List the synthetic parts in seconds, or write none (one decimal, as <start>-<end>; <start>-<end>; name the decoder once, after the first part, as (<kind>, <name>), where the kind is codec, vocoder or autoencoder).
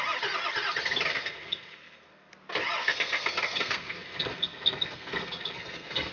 1.1-2.3 (codec, SNAC); 2.8-6.1